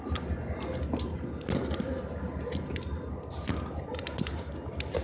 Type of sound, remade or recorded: recorded